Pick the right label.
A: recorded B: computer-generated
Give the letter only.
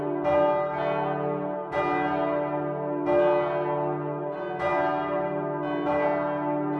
A